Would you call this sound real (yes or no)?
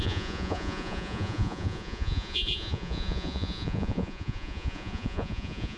no